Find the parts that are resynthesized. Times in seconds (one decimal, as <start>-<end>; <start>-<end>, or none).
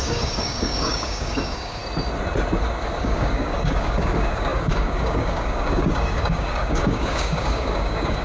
0.0-1.8; 3.0-8.2